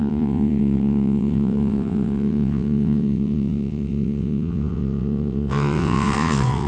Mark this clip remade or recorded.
remade